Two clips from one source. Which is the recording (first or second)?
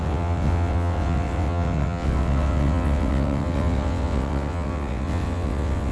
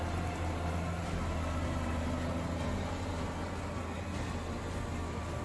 second